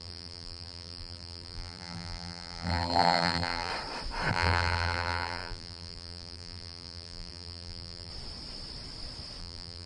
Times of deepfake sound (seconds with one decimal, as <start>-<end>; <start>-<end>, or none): 0.0-3.7; 4.3-8.1; 9.4-9.9

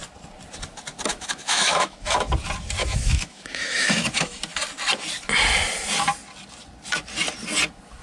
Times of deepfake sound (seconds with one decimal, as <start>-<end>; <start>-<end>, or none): 1.1-2.3; 2.8-4.4

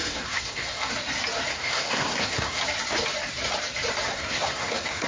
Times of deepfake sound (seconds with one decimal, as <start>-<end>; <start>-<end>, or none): 0.0-0.9; 1.5-2.6; 4.1-5.1

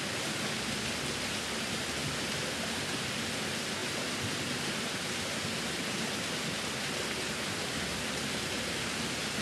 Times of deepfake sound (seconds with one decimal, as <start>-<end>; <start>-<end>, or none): none

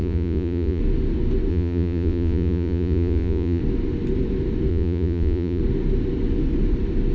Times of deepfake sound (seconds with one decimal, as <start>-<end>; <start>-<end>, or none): 0.0-0.8; 1.5-3.6; 4.7-5.6

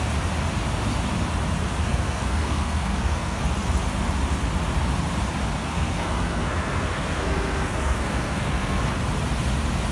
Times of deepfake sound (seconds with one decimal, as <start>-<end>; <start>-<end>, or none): 1.8-3.4; 5.6-8.8